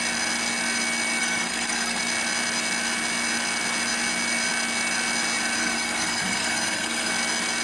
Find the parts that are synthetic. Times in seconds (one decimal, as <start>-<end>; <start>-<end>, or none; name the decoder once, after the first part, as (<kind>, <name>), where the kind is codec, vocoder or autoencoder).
1.2-2.0 (codec, SNAC); 5.6-7.1